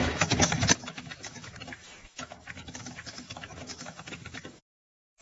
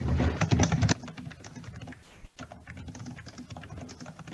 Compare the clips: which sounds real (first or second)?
second